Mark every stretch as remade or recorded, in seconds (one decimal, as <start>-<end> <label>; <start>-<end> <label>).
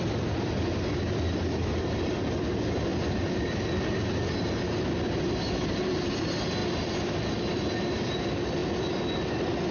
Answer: 0.0-2.9 recorded; 2.9-3.9 remade; 3.9-6.6 recorded; 6.6-7.4 remade; 7.4-8.6 recorded; 8.6-9.7 remade